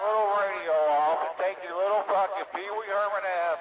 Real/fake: real